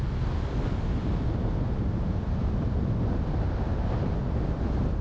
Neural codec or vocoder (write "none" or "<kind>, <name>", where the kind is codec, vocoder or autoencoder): none